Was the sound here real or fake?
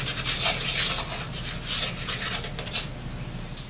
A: real